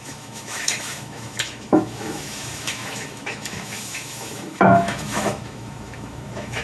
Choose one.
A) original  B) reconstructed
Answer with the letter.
B